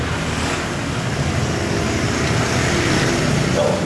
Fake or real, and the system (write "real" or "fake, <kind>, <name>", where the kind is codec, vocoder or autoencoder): real